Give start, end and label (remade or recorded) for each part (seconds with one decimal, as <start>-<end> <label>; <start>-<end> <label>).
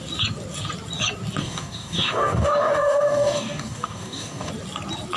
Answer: 0.0-1.4 recorded; 1.4-4.5 remade; 4.5-5.2 recorded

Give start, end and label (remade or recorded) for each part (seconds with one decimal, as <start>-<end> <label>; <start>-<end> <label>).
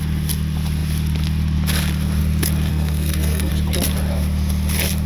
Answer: 0.0-2.7 recorded; 2.7-3.5 remade; 3.5-5.1 recorded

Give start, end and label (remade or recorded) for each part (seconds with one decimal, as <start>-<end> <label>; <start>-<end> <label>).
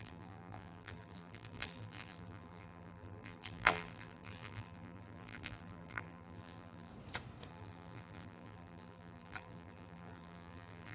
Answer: 0.0-6.9 remade; 6.9-7.5 recorded; 7.5-10.9 remade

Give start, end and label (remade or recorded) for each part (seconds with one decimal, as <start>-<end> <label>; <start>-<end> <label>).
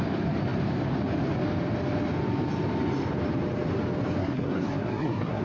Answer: 0.0-4.2 recorded; 4.2-5.4 remade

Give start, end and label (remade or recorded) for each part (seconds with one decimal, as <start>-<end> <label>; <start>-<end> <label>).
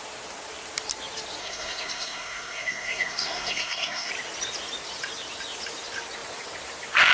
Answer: 0.0-1.4 recorded; 1.4-4.1 remade; 4.1-7.1 recorded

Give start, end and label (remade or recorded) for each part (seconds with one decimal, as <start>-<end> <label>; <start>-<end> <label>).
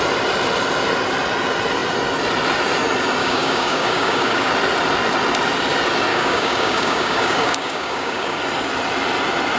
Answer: 0.0-3.2 recorded; 3.2-4.5 remade; 4.5-6.1 recorded; 6.1-8.4 remade; 8.4-9.6 recorded